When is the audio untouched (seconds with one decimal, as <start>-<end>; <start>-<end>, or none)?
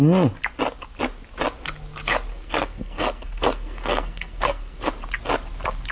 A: 0.0-2.3; 4.9-5.9